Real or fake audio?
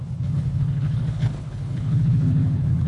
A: fake